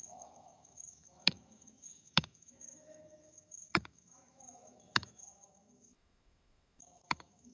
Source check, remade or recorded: remade